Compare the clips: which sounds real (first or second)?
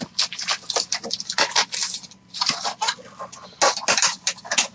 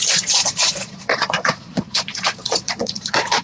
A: first